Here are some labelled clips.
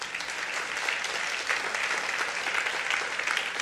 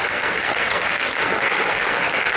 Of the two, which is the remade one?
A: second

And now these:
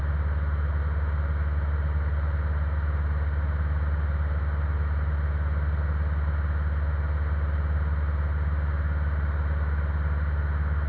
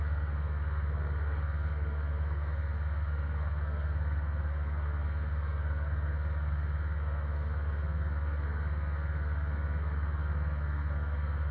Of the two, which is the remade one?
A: second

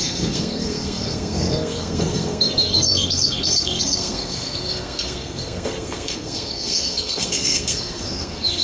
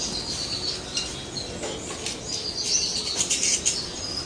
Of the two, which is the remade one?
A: first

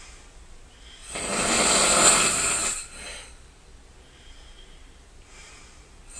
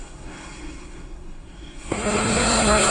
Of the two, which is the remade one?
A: second